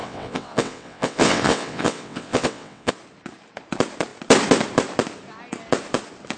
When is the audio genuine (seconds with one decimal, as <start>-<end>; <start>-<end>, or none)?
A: 2.9-6.4